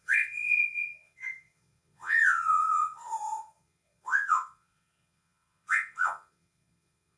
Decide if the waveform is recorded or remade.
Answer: remade